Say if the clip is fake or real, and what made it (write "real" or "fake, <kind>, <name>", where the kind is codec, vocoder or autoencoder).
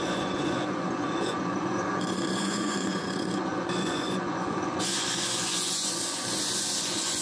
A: fake, vocoder, Vocos